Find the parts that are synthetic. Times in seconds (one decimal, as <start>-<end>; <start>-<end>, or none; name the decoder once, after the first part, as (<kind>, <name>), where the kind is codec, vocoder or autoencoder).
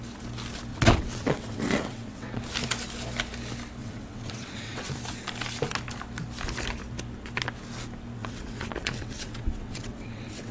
0.7-2.4 (vocoder, WaveNeXt); 3.8-4.9; 8.2-10.5